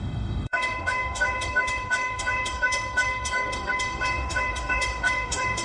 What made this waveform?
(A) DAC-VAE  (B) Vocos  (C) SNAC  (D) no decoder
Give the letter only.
A